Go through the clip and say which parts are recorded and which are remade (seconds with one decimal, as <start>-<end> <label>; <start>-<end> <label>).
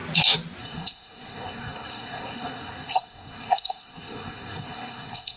0.0-0.6 recorded; 0.6-5.4 remade